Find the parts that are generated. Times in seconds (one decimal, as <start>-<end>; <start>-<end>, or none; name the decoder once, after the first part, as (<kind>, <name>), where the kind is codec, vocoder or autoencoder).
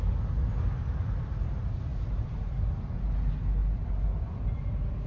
none